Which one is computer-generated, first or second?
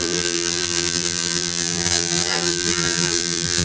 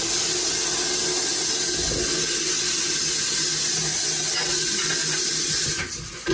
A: first